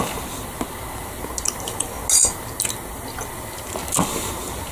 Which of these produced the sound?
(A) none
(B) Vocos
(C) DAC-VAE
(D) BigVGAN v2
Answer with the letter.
A